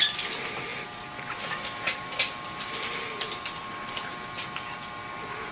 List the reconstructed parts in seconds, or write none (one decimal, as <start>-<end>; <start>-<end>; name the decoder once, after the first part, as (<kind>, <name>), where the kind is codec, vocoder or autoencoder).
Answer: 0.0-5.5 (vocoder, BigVGAN v2)